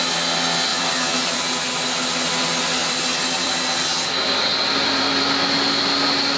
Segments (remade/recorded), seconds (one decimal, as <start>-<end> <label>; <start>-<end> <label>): 0.0-0.7 recorded; 0.7-1.4 remade; 1.4-2.8 recorded; 2.8-4.1 remade; 4.1-6.4 recorded